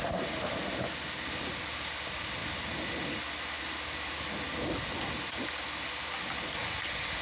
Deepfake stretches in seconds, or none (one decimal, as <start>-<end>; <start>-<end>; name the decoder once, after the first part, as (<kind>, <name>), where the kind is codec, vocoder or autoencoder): none